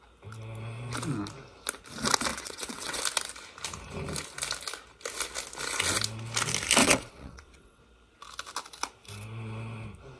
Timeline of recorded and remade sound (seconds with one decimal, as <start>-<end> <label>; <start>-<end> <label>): 0.0-2.3 recorded; 2.3-3.0 remade; 3.0-6.8 recorded; 6.8-7.8 remade; 7.8-10.2 recorded